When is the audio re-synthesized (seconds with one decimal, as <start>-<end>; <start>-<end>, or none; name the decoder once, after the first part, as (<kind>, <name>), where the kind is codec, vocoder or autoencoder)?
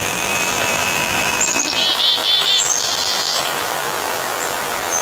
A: 0.0-5.0 (vocoder, BigVGAN v2)